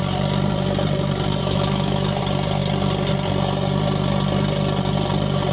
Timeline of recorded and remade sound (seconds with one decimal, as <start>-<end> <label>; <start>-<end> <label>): 0.0-1.4 recorded; 1.4-2.2 remade; 2.2-5.5 recorded